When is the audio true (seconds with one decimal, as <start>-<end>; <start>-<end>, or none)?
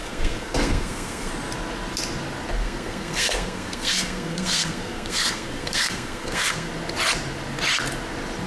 1.3-2.6; 6.7-8.5